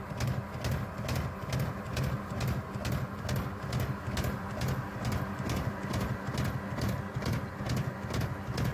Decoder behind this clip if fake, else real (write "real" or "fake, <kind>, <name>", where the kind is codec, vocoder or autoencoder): real